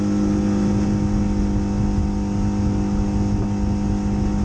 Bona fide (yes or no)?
yes